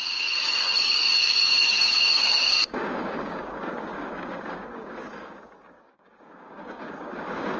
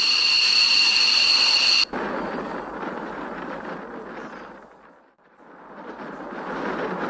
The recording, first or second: second